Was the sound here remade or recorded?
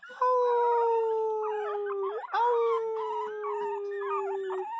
recorded